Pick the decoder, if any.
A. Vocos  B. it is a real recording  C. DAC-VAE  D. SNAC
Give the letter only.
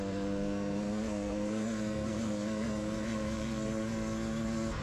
D